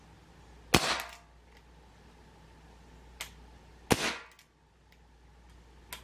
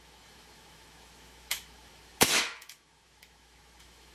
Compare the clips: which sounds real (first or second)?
first